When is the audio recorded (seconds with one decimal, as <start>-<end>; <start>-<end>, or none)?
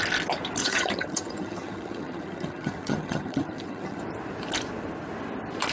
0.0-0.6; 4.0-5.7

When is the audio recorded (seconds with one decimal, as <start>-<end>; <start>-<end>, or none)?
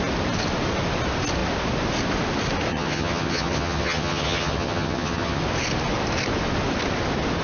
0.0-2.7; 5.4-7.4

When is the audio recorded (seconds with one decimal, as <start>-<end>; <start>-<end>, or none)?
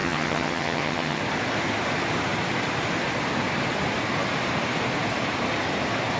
1.2-6.2